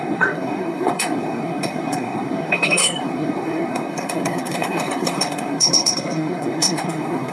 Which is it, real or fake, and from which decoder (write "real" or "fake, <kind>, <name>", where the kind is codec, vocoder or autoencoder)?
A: fake, codec, SNAC